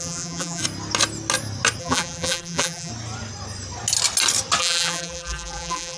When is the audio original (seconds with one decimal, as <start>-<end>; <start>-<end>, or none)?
0.6-1.8; 2.9-4.6